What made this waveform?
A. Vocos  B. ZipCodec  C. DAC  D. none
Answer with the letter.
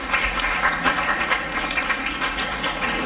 A